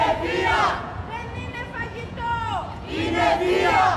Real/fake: fake